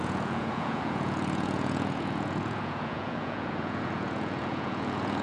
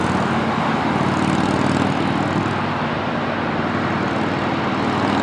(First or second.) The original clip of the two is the second